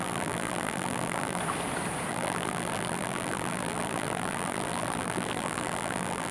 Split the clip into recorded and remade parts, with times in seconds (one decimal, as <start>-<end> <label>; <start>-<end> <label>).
0.0-1.4 remade; 1.4-2.1 recorded; 2.1-6.3 remade